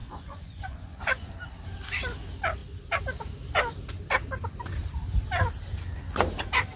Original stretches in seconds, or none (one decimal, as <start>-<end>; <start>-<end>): 1.3-6.8